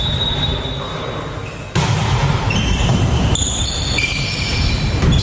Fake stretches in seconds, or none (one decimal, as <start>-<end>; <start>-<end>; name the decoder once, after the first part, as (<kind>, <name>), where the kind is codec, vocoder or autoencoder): 0.0-0.5 (vocoder, BigVGAN v2); 3.6-5.2